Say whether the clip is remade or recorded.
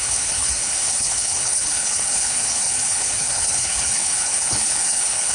remade